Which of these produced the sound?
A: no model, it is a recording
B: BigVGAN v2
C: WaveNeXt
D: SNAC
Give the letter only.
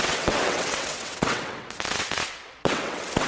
C